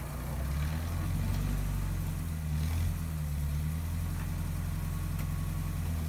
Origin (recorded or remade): recorded